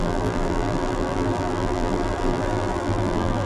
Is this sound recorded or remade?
remade